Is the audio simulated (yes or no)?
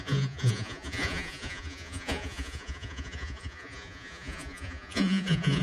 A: yes